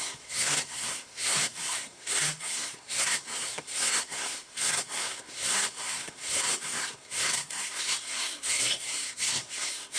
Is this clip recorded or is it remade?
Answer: remade